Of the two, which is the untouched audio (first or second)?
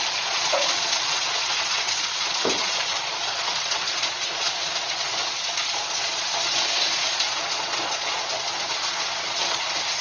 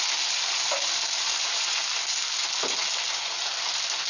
second